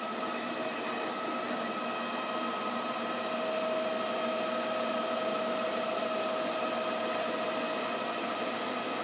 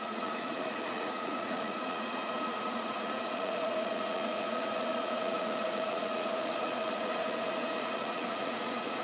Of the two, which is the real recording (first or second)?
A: first